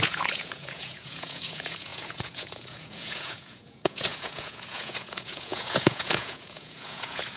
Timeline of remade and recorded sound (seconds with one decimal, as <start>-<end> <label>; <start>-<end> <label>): 0.0-7.4 remade